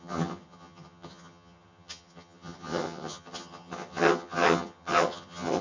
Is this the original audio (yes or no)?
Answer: no